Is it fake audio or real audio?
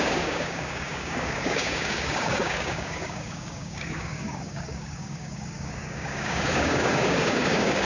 fake